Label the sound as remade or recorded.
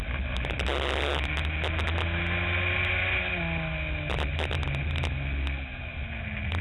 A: recorded